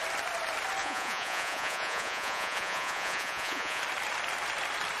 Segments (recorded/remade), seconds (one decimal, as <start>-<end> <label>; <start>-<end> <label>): 0.0-0.8 recorded; 0.8-3.8 remade; 3.8-5.0 recorded